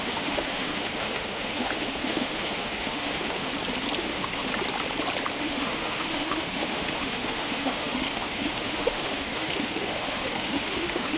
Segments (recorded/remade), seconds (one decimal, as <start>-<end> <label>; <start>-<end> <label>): 0.0-3.5 remade; 3.5-4.0 recorded; 4.0-4.5 remade; 4.5-5.4 recorded; 5.4-11.2 remade